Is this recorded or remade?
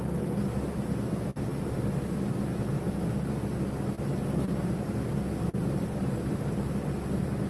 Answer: recorded